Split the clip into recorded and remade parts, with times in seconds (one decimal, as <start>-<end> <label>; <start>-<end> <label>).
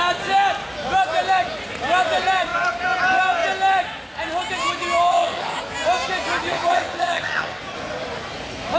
0.0-5.1 recorded; 5.1-5.6 remade; 5.6-6.5 recorded; 6.5-7.6 remade; 7.6-8.8 recorded